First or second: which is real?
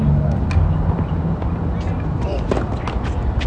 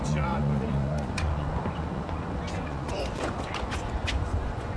first